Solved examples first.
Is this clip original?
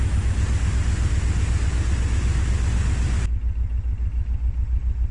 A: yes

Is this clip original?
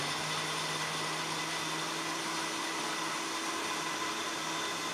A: yes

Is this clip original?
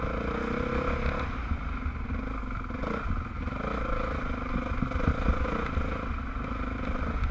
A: yes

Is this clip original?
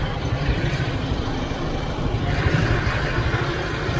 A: no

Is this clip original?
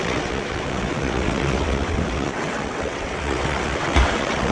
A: no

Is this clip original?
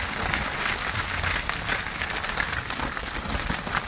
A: yes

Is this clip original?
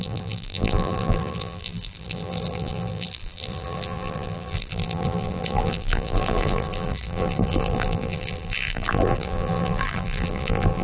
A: no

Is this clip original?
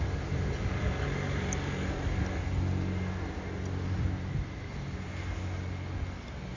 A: yes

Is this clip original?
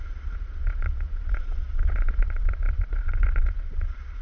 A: no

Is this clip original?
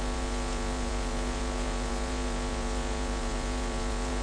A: no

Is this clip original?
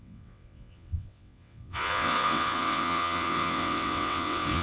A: no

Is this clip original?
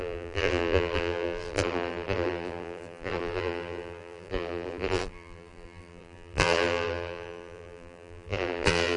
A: no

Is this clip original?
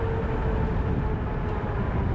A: yes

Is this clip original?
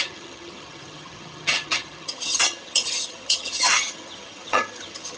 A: no